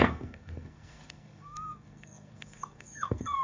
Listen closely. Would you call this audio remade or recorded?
remade